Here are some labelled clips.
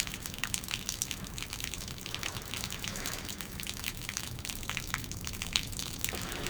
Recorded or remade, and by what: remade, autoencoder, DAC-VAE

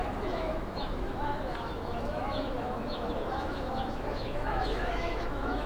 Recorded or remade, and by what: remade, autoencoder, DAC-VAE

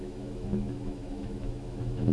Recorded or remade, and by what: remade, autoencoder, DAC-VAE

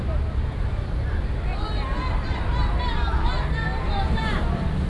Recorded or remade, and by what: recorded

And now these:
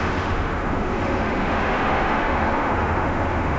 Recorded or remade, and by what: remade, autoencoder, DAC-VAE